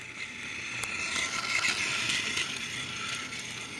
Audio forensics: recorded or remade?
recorded